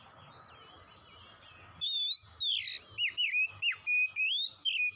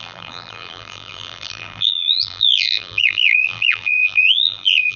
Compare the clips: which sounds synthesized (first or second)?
second